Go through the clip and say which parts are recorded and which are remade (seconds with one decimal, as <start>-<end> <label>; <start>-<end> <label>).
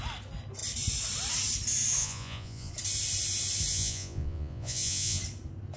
0.0-2.0 recorded; 2.0-2.7 remade; 2.7-3.7 recorded; 3.7-5.2 remade; 5.2-5.8 recorded